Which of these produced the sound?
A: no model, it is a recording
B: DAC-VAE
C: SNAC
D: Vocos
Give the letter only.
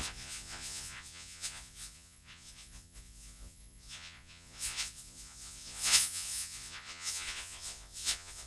D